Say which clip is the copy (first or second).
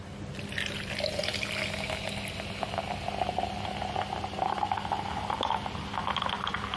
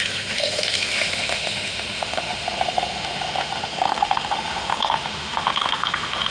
second